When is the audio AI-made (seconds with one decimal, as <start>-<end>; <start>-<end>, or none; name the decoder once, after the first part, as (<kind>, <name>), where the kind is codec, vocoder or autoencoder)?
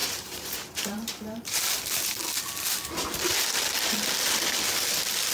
0.0-1.6 (vocoder, BigVGAN v2)